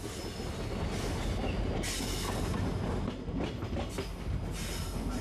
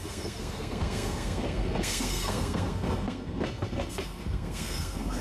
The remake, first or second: second